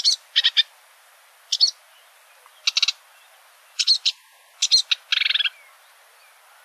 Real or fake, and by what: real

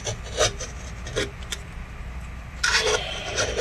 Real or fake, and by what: real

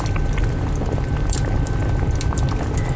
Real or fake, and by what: real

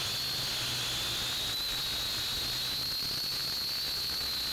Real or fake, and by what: real